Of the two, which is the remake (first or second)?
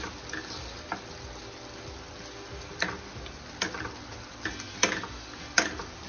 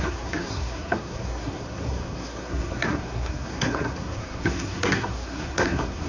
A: second